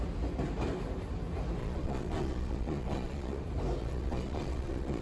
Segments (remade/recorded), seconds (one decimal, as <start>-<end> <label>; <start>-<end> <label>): 0.0-1.6 recorded; 1.6-3.4 remade; 3.4-3.8 recorded; 3.8-5.0 remade